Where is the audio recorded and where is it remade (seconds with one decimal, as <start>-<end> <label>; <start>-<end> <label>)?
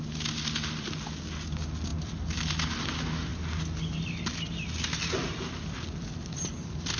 0.0-7.0 recorded